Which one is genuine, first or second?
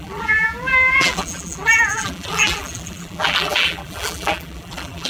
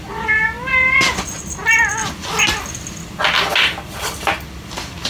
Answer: second